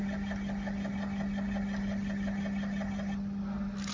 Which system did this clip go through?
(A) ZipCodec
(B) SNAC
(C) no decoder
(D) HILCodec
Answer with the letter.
C